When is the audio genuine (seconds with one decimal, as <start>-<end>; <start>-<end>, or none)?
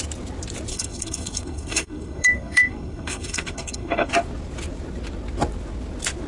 0.0-0.7; 4.1-6.3